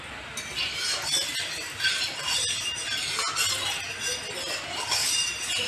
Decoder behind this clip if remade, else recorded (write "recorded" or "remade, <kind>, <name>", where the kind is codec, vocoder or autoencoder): recorded